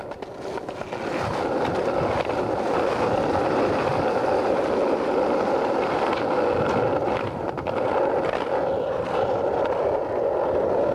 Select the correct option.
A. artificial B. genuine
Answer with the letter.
B